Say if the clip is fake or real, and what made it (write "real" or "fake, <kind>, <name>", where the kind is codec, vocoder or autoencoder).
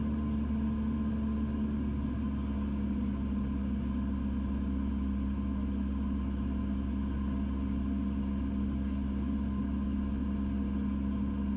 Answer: real